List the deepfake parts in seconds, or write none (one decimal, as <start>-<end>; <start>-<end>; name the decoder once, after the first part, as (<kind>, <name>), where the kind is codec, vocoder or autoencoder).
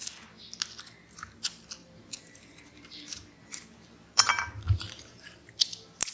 1.8-5.5 (vocoder, BigVGAN v2)